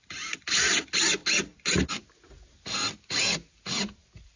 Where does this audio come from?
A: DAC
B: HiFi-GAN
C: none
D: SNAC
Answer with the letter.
C